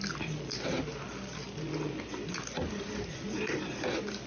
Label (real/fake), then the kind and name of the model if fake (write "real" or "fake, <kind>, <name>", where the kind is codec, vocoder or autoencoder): real